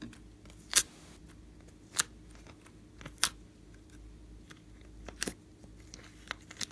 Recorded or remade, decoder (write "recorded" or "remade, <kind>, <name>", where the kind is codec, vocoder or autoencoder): recorded